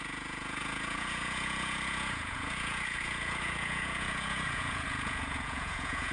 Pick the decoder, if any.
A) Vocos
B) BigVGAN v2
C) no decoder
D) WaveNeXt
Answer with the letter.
A